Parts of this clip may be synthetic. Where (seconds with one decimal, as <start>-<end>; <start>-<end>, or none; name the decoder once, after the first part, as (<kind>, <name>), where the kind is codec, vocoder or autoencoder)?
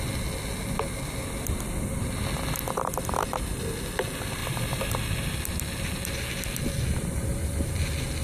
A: 4.4-4.9 (vocoder, BigVGAN v2)